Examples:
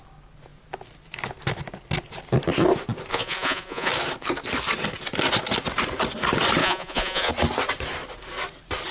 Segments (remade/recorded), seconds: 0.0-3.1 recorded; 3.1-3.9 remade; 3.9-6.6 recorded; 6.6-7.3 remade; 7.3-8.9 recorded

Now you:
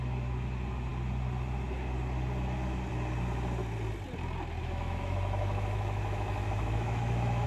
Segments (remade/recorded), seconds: 0.0-4.6 recorded; 4.6-7.5 remade